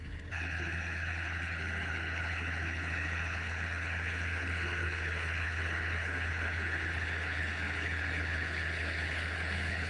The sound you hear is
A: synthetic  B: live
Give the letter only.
A